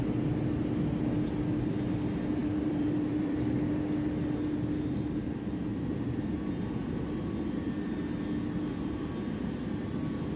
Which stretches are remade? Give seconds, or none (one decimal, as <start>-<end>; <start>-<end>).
2.4-3.7; 5.7-6.2